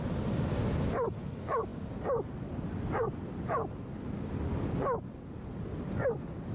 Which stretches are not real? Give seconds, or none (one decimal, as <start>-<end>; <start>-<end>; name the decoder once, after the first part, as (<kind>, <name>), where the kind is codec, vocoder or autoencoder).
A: none